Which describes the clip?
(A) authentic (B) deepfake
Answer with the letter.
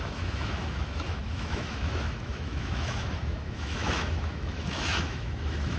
B